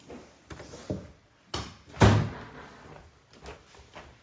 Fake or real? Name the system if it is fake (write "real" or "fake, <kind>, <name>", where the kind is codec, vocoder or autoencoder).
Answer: real